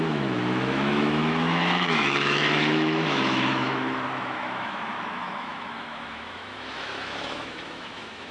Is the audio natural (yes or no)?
no